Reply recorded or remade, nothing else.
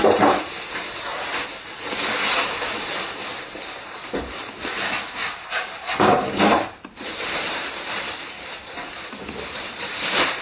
remade